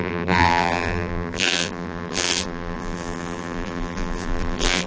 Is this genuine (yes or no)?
no